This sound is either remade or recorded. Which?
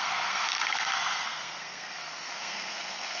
remade